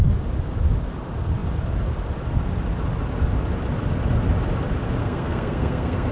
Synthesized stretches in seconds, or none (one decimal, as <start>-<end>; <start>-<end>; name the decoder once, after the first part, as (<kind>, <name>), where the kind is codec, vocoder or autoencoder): 5.0-6.1 (codec, SNAC)